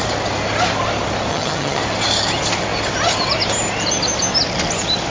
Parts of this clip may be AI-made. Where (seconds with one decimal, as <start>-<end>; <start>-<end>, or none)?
1.3-1.8